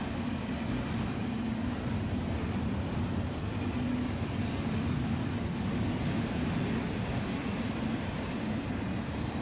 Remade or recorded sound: recorded